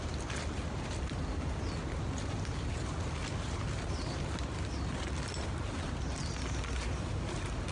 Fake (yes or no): no